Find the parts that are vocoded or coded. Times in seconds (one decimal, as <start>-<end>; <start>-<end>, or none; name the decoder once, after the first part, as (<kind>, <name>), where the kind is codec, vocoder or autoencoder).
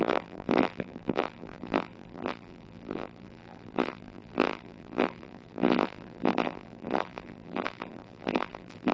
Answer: 0.0-8.9 (vocoder, BigVGAN v2)